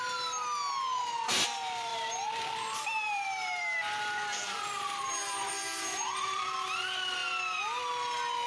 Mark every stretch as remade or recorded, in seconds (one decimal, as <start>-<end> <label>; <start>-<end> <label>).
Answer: 0.0-1.9 recorded; 1.9-4.5 remade; 4.5-5.9 recorded; 5.9-6.4 remade; 6.4-8.5 recorded